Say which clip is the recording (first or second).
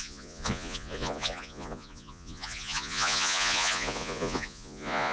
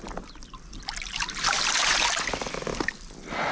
second